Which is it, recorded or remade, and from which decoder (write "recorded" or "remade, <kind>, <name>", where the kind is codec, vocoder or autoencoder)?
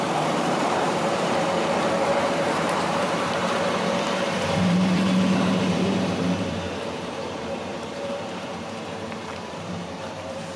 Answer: remade, vocoder, BigVGAN v2